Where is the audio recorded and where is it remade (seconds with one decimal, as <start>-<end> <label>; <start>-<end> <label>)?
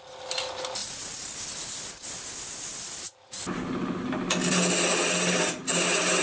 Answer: 0.0-6.2 recorded